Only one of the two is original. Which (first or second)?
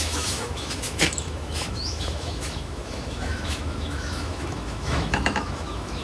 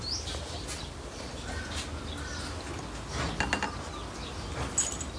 second